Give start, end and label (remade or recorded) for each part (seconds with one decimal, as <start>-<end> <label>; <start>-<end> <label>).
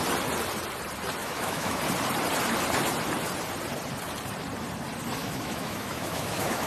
0.0-1.2 recorded; 1.2-1.8 remade; 1.8-5.2 recorded; 5.2-6.7 remade